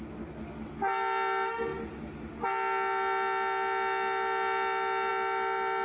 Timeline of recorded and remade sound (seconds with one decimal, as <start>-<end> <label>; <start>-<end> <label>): 0.0-5.8 recorded